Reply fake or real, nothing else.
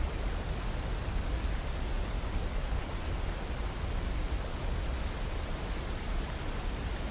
real